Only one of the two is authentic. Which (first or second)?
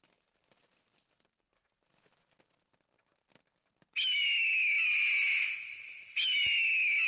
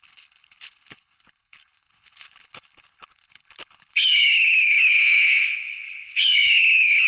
first